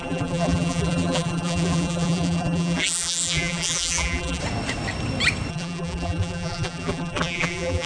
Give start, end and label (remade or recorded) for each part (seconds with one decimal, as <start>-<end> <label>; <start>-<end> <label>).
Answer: 0.0-4.4 remade; 4.4-5.5 recorded; 5.5-7.9 remade